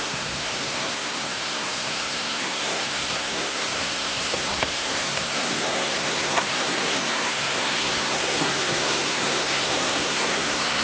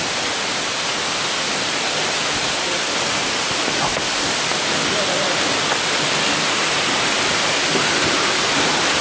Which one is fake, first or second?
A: first